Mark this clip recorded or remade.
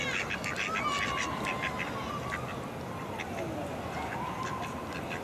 recorded